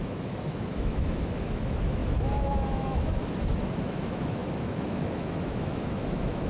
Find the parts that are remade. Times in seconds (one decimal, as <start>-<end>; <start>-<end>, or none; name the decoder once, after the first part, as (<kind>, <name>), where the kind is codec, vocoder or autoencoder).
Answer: 0.0-3.2 (autoencoder, DAC-VAE); 3.8-6.5